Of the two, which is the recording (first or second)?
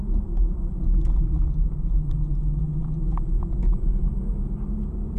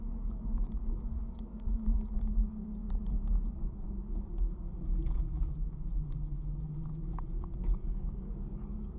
first